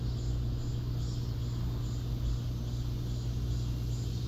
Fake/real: real